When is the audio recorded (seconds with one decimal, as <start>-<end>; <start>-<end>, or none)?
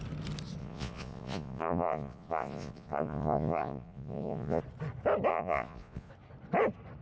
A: 0.0-0.6; 4.6-5.3; 6.1-7.0